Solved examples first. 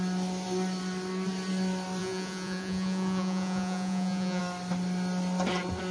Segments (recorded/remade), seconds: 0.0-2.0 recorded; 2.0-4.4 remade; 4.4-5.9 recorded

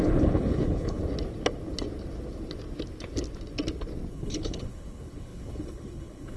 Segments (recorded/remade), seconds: 0.0-1.0 remade; 1.0-4.1 recorded; 4.1-6.4 remade

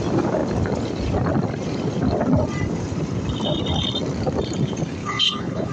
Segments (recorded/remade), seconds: 0.0-5.0 recorded; 5.0-5.7 remade

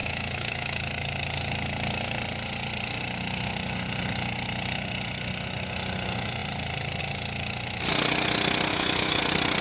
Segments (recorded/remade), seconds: 0.0-0.8 remade; 0.8-8.7 recorded; 8.7-9.2 remade; 9.2-9.6 recorded

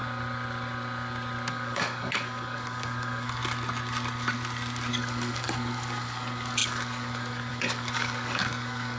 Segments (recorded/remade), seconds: 0.0-1.5 recorded; 1.5-3.4 remade; 3.4-4.9 recorded; 4.9-9.0 remade